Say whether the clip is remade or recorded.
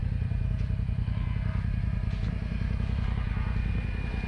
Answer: recorded